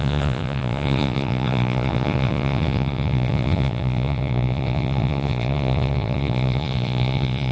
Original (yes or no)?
no